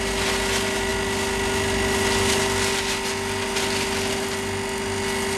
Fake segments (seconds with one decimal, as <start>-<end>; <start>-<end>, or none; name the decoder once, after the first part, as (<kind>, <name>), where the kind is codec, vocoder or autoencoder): none